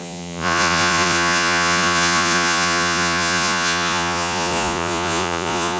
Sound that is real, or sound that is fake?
fake